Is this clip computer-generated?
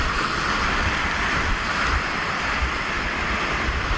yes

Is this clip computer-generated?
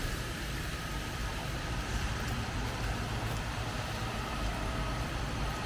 yes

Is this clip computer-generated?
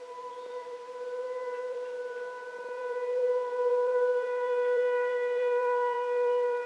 yes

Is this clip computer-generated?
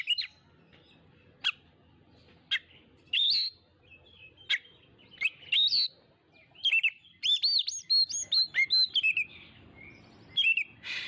no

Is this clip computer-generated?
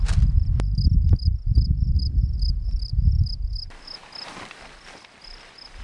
no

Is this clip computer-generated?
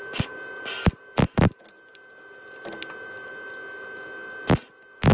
no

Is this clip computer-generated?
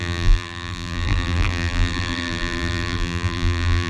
yes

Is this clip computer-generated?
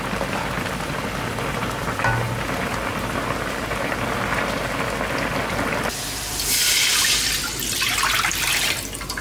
no